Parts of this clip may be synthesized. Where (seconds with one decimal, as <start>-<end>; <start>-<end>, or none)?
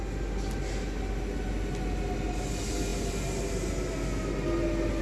none